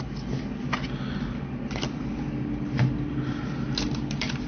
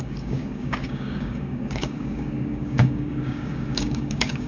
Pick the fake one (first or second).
second